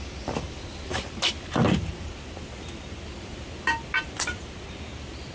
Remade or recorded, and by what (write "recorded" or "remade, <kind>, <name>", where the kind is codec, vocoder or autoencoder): recorded